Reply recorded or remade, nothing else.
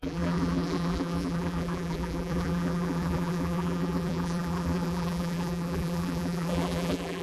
remade